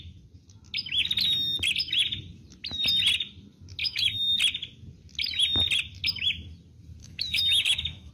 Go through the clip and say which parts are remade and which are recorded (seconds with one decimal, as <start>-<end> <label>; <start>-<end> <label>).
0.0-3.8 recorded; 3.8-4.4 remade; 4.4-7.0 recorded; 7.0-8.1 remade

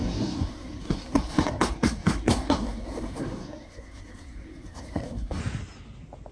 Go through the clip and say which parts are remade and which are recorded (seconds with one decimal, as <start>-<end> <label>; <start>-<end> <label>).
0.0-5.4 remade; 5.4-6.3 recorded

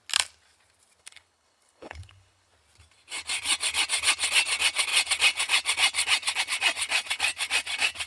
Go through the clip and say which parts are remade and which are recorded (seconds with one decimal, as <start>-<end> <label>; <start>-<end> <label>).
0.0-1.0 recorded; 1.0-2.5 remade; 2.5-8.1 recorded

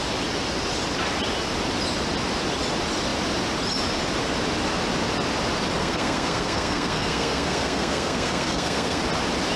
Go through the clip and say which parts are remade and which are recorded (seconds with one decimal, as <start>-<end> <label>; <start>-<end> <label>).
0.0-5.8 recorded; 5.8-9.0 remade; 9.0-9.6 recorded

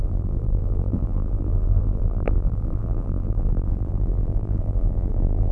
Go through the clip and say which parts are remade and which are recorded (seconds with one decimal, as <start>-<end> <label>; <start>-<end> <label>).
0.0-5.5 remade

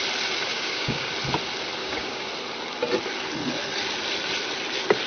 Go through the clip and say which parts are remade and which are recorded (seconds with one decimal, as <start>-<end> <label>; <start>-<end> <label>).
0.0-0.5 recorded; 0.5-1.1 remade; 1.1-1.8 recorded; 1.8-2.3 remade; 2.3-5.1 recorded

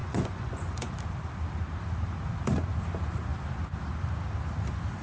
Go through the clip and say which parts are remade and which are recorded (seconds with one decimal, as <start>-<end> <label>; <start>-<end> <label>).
0.0-0.9 remade; 0.9-5.0 recorded

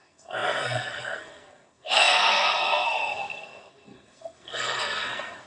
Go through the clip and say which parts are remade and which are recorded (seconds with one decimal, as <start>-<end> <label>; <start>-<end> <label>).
0.0-5.5 remade